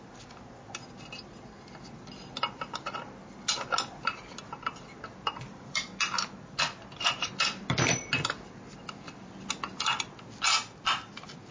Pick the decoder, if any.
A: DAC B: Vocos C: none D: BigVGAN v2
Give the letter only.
C